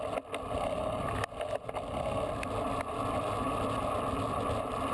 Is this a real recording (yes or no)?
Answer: yes